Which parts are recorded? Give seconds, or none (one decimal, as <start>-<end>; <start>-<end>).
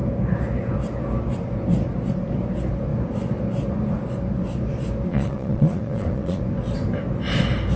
0.0-5.1; 6.4-7.8